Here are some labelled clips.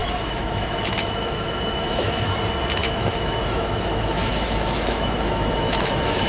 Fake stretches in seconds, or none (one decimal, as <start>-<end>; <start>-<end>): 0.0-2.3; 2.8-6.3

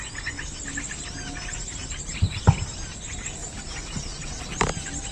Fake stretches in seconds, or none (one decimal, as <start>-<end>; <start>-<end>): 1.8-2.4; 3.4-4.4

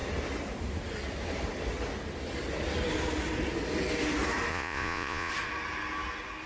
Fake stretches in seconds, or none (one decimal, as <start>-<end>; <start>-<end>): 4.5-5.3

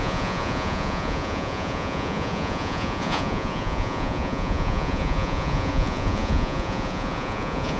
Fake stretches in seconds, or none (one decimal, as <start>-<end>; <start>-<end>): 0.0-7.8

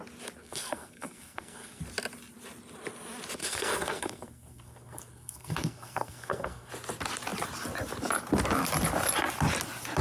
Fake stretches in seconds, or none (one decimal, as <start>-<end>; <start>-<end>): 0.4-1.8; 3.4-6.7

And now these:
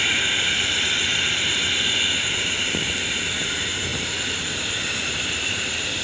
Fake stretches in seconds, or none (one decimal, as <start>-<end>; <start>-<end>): 0.0-1.1; 2.2-6.0

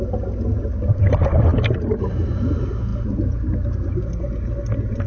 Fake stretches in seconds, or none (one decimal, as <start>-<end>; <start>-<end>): none